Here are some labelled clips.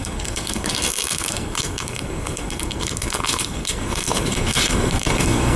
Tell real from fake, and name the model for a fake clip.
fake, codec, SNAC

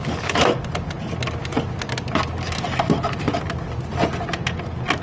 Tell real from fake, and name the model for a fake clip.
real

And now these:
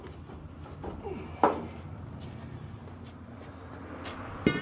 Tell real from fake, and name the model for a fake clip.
real